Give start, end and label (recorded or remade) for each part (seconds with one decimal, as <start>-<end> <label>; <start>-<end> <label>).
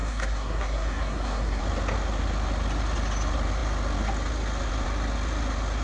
0.0-1.6 remade; 1.6-5.8 recorded